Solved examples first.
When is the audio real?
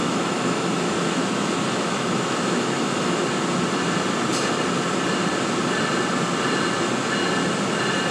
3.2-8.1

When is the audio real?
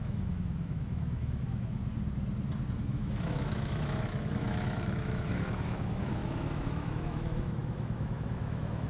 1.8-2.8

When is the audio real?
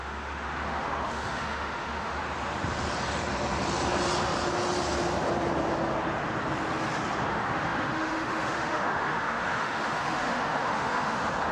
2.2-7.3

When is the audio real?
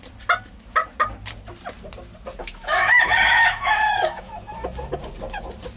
0.0-2.4; 4.3-5.8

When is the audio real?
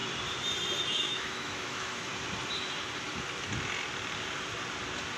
0.0-0.9; 2.1-5.2